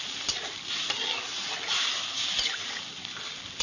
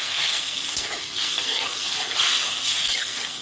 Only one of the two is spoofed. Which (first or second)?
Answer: second